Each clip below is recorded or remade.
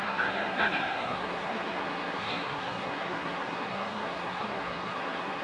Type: remade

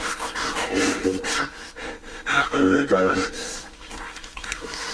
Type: remade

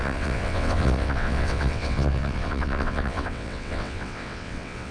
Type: remade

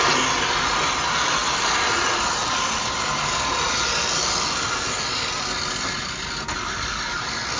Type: recorded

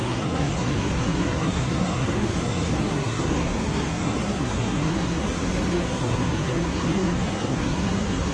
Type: remade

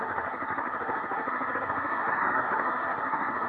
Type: remade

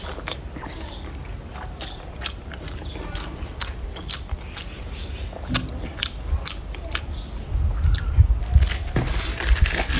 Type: remade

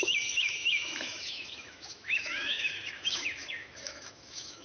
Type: remade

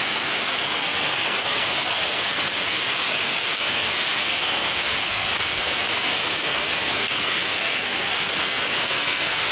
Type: remade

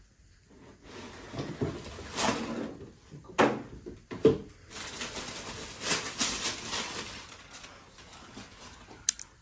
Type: recorded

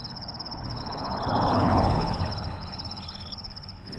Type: remade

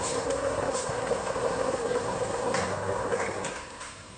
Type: remade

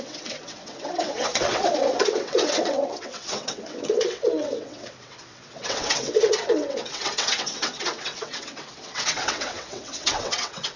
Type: remade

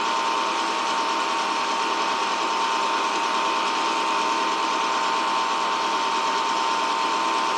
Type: recorded